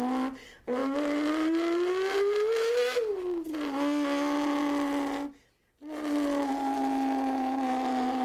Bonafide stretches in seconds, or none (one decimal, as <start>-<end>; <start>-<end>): 0.0-8.2